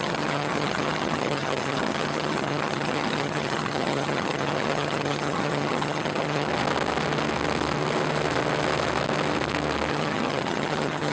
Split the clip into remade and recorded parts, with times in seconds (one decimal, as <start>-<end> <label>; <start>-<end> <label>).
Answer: 0.0-6.5 remade; 6.5-9.9 recorded; 9.9-11.1 remade